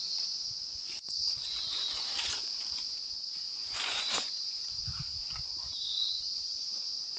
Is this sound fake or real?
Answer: fake